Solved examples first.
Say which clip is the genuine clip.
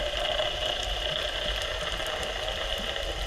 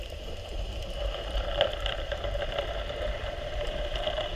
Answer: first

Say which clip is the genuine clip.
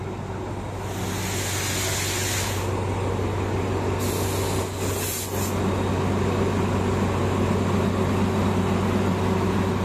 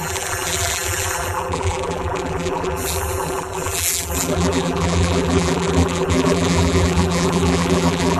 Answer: first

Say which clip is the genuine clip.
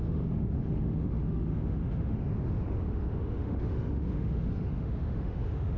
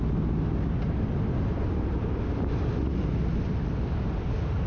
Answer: second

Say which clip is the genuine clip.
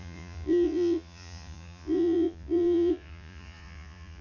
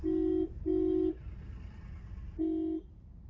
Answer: second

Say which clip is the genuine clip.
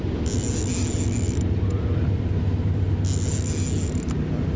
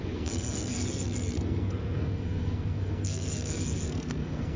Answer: first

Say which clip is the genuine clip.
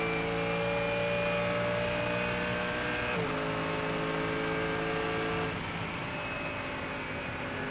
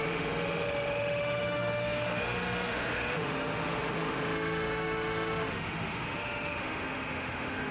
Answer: first